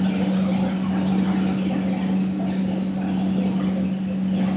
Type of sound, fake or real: real